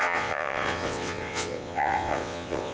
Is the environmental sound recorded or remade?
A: remade